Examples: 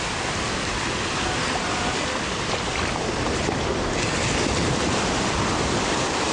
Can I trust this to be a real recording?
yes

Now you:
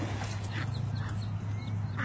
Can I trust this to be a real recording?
yes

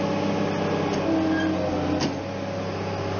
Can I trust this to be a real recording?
yes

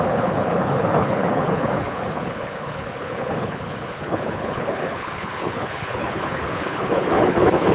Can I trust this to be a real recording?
no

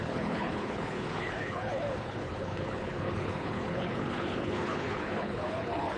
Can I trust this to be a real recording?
no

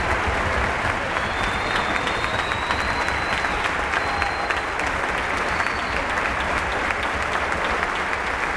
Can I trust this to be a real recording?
yes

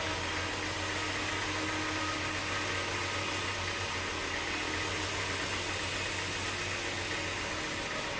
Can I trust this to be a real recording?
yes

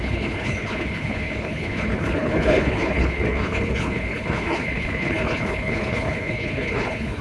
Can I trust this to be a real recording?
no